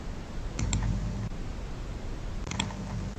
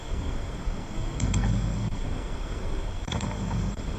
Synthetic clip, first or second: second